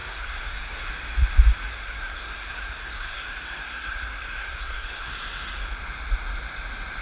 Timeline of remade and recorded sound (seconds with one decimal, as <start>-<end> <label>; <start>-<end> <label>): 0.0-0.9 remade; 0.9-1.7 recorded; 1.7-5.1 remade; 5.1-7.0 recorded